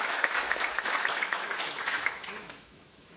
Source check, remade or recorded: remade